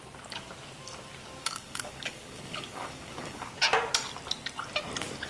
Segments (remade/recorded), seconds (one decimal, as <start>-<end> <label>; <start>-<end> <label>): 0.0-1.4 recorded; 1.4-3.5 remade; 3.5-5.3 recorded